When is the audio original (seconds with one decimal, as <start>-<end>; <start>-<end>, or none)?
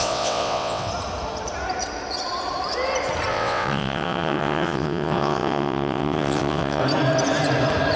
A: 0.9-3.3; 6.8-8.0